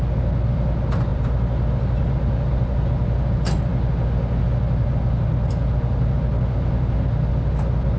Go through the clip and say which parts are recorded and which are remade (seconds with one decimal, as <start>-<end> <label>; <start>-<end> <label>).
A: 0.0-8.0 recorded